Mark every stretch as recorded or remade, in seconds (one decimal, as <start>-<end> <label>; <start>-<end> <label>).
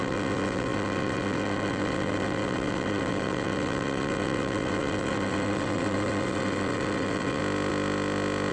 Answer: 0.0-7.4 remade; 7.4-8.5 recorded